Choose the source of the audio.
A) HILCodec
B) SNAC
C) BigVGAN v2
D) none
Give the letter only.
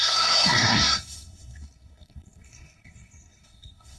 B